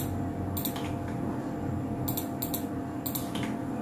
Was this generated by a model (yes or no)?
no